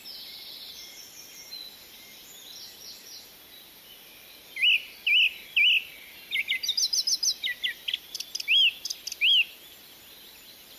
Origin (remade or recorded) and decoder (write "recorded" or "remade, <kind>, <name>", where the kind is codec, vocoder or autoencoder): recorded